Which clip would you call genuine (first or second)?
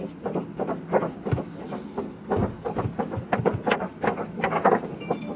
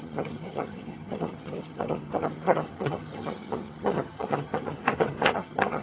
first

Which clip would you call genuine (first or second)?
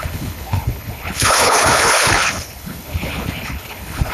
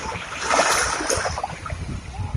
second